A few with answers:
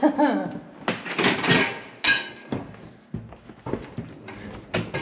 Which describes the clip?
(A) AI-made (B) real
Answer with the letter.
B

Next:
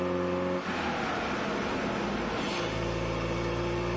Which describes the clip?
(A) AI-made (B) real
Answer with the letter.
B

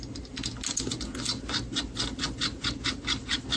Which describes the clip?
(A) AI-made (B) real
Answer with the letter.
B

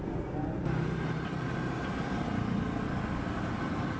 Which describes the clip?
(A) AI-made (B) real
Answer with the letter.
B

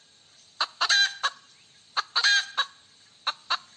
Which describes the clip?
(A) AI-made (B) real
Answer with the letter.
B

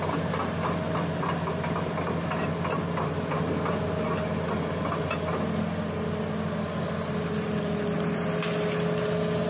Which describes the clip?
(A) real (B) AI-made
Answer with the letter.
A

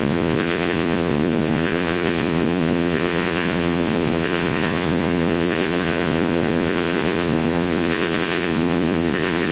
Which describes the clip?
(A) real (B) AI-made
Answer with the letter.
B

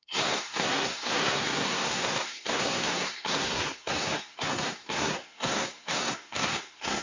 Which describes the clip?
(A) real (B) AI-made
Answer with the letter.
B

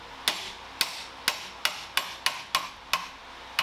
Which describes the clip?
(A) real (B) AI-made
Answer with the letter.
A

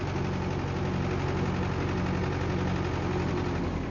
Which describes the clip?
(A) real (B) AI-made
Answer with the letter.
A